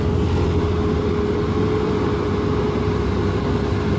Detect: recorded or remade recorded